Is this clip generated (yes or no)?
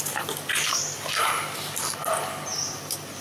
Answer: no